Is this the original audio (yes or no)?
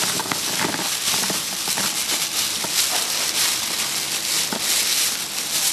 yes